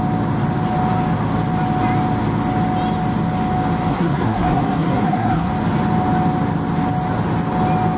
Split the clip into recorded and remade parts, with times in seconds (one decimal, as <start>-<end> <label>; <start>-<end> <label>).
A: 0.0-3.9 recorded; 3.9-5.5 remade; 5.5-8.0 recorded